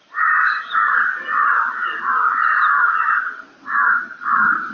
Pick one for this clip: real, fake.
fake